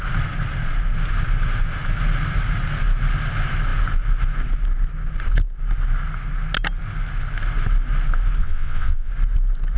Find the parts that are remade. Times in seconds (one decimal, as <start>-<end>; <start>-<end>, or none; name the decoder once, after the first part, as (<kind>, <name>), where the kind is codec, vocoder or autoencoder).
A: 8.4-9.1 (vocoder, WaveNeXt)